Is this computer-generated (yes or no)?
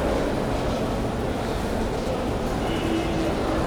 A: no